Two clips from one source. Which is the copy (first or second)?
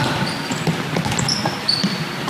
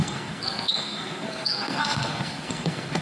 second